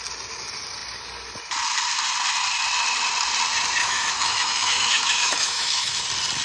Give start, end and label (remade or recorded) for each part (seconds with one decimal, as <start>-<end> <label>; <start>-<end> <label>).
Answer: 0.0-3.8 recorded; 3.8-6.0 remade; 6.0-6.4 recorded